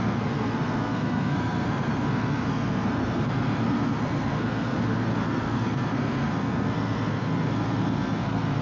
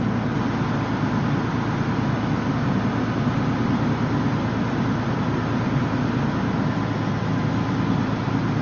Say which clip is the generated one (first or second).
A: first